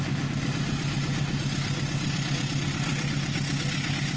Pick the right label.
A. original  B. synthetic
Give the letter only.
A